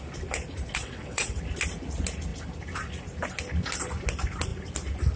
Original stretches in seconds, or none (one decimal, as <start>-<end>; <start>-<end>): 0.0-0.8; 1.4-5.2